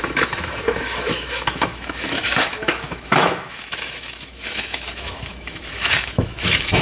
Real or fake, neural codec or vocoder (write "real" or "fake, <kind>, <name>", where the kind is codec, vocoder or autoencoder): fake, autoencoder, DAC-VAE